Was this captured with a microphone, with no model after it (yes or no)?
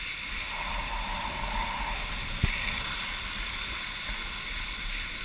yes